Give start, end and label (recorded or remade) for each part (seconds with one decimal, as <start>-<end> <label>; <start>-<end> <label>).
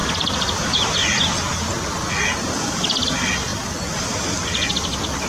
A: 0.0-5.3 recorded